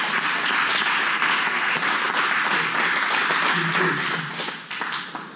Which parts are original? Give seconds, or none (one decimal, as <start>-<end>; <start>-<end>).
0.0-1.1; 1.7-5.4